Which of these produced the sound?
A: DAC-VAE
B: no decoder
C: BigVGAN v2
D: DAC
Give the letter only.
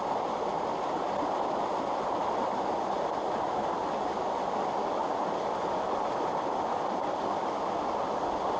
B